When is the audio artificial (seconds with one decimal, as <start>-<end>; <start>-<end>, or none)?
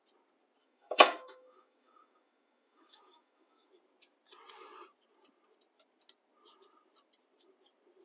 0.6-3.7